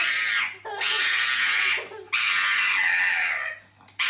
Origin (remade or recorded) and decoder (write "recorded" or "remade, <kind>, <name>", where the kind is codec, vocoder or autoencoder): recorded